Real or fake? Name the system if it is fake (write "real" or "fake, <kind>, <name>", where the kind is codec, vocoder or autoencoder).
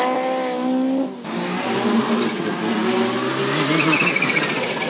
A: real